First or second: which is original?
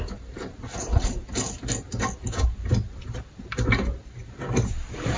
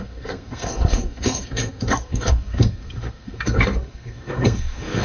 first